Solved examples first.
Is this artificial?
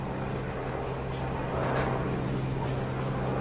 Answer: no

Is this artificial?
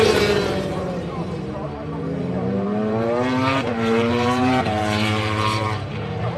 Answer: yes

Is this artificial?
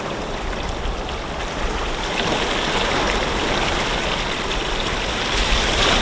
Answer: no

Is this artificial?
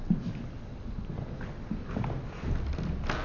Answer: no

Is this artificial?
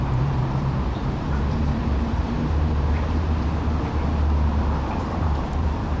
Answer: yes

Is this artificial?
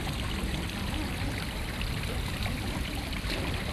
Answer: yes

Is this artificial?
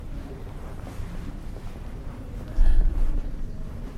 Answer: yes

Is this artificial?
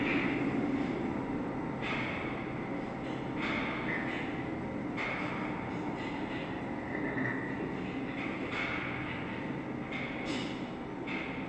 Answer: no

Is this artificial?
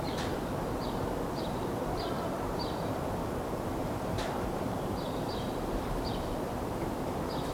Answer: yes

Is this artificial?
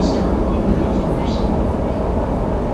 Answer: no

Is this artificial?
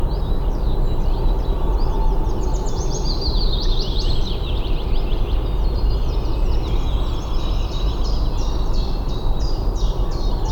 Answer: yes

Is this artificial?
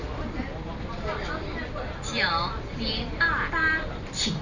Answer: yes